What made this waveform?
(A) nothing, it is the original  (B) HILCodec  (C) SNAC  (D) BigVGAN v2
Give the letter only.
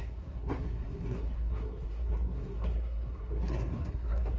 C